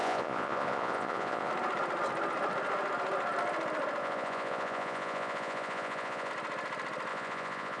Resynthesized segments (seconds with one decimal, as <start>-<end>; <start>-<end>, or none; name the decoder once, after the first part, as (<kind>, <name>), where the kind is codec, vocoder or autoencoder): 0.0-1.5 (vocoder, Vocos); 4.0-6.3; 7.1-7.8